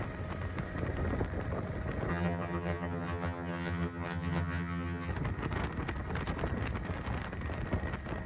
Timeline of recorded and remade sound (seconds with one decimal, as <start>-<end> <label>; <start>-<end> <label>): 0.0-2.1 recorded; 2.1-5.1 remade; 5.1-8.3 recorded